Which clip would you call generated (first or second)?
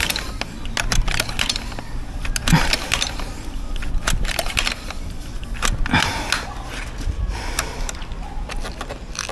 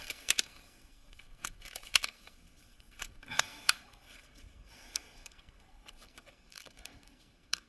second